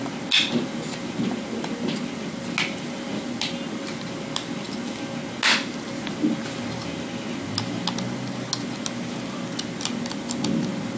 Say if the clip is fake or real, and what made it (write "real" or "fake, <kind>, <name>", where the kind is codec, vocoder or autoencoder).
real